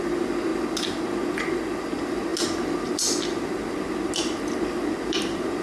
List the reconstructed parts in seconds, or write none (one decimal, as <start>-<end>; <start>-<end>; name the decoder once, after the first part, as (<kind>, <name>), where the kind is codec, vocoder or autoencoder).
none